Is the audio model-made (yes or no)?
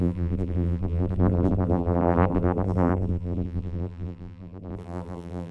yes